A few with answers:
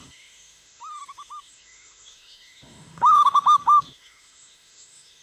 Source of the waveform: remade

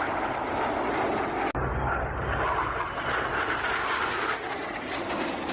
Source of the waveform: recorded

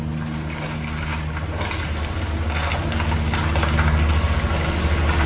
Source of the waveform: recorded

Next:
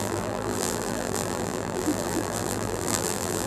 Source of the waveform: remade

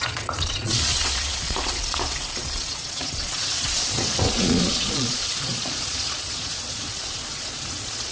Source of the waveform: remade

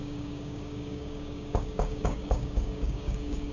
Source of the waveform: remade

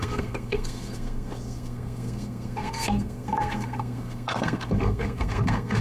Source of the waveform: remade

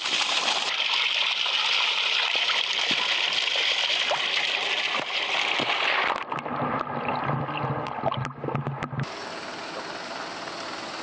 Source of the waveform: recorded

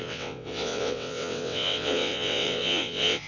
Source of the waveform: remade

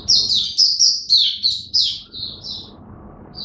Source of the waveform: recorded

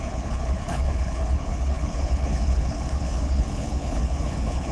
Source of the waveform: remade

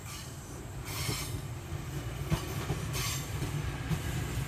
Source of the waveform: recorded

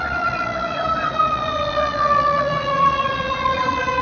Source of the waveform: remade